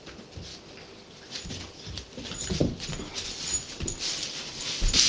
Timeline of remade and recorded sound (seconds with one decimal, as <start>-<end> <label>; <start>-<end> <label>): 0.0-5.1 recorded

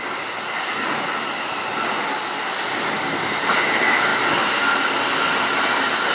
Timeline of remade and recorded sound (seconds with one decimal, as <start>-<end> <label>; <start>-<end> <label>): 0.0-6.1 recorded

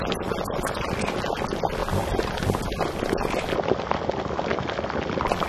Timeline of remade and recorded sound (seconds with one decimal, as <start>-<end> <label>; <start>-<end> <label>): 0.0-5.5 recorded

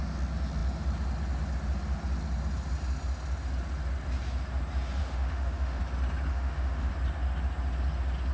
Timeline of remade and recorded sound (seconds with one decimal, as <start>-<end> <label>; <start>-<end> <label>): 0.0-5.0 recorded; 5.0-5.8 remade; 5.8-6.3 recorded; 6.3-6.9 remade; 6.9-8.3 recorded